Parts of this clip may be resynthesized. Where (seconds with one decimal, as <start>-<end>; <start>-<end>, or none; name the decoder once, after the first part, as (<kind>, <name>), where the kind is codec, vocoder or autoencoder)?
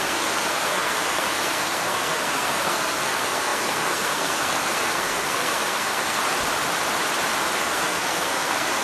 0.0-6.2 (codec, SNAC); 7.6-8.8